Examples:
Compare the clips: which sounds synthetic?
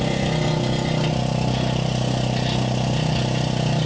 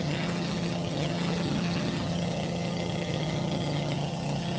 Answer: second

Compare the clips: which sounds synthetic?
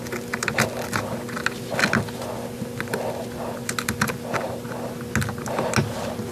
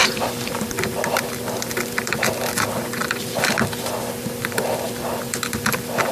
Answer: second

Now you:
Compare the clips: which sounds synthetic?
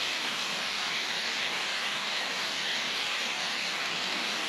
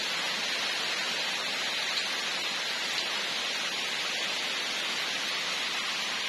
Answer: first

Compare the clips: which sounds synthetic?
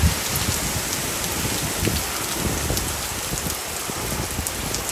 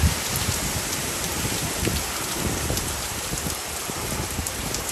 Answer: second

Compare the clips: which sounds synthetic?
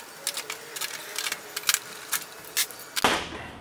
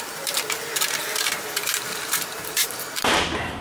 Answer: second